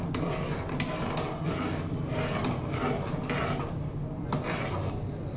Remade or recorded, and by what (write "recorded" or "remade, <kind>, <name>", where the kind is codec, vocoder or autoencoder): recorded